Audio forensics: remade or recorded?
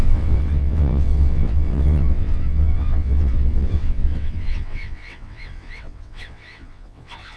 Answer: remade